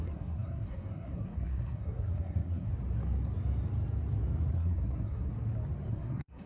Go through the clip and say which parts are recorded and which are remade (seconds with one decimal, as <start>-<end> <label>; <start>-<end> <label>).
0.0-2.7 remade; 2.7-4.5 recorded; 4.5-5.3 remade; 5.3-5.9 recorded; 5.9-6.5 remade